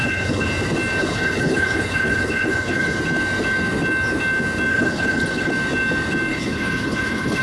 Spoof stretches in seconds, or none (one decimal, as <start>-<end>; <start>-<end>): 0.0-0.5; 1.0-3.0; 4.7-5.5; 6.3-7.4